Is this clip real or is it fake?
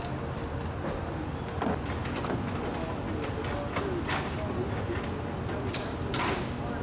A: real